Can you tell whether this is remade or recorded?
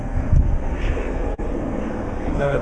remade